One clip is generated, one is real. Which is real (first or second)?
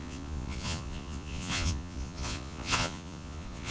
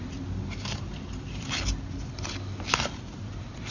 second